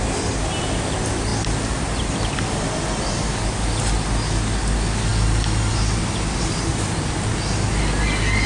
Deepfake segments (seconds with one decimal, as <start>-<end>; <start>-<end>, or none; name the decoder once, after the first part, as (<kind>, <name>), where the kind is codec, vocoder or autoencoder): 6.7-7.3 (vocoder, BigVGAN v2)